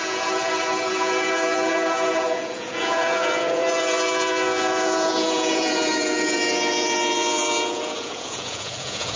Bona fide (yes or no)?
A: no